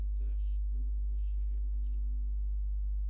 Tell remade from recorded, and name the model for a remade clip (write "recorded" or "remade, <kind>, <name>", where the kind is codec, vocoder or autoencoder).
remade, codec, SNAC